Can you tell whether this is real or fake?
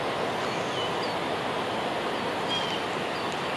real